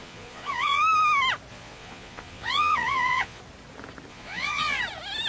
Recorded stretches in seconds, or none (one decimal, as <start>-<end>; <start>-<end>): 0.8-1.5; 3.4-4.1; 4.8-5.3